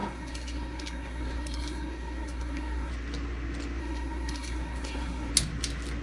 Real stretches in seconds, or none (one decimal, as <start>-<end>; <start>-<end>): 2.9-3.8; 5.3-6.0